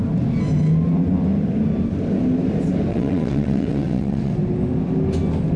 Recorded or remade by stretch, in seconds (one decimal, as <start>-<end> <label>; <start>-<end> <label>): 0.0-2.9 recorded; 2.9-4.3 remade; 4.3-5.6 recorded